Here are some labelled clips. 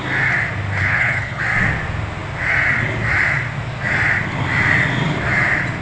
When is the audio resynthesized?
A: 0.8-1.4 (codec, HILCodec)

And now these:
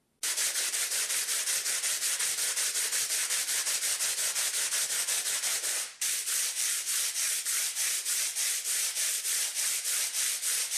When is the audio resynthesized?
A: 3.2-3.7 (vocoder, BigVGAN v2); 5.5-7.1; 9.5-10.3

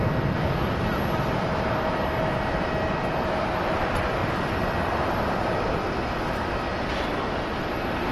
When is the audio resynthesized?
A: none